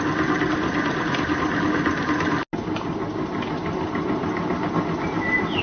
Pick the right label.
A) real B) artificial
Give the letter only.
A